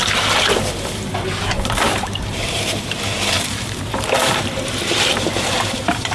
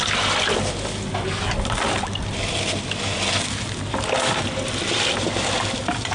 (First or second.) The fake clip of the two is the first